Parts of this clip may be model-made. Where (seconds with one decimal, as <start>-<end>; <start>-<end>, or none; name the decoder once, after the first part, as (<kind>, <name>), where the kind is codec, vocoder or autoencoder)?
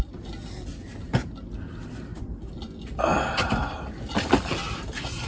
none